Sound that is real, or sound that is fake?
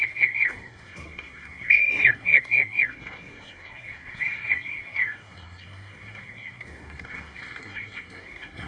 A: fake